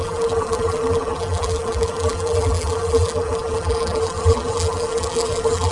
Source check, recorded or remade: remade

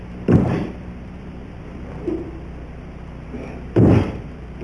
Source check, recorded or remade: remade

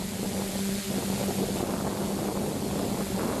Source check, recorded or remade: recorded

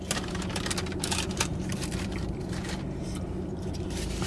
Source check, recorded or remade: remade